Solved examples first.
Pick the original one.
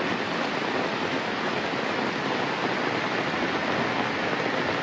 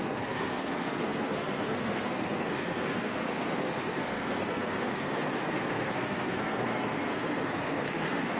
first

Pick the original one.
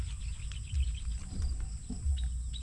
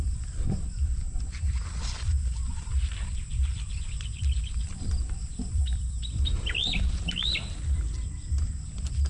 first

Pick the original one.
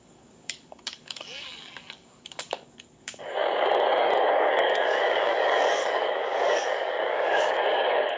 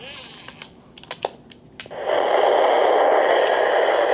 second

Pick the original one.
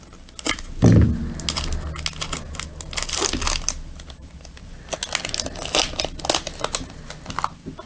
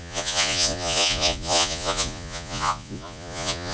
first